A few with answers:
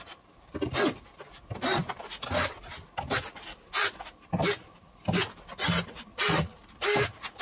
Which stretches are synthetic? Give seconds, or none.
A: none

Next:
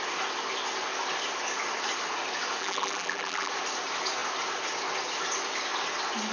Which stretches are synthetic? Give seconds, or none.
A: 2.6-3.5

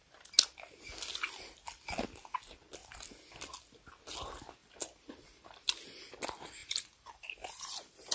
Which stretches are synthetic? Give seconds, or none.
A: 4.6-5.7; 6.6-8.1

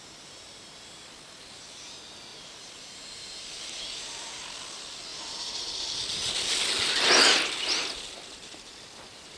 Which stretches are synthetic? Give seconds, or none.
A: 2.3-4.0; 5.1-5.7